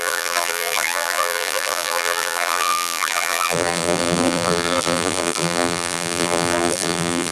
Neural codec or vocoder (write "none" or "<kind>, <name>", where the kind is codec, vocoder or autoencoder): vocoder, BigVGAN v2